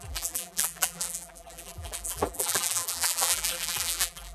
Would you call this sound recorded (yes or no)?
no